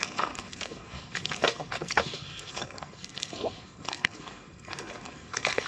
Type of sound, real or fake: fake